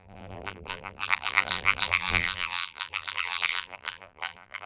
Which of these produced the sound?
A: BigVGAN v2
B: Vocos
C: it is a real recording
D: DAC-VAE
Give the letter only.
A